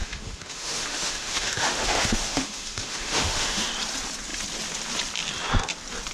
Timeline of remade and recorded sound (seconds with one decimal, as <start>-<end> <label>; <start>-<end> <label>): 0.0-3.7 remade; 3.7-6.1 recorded